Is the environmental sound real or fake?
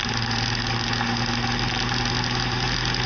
real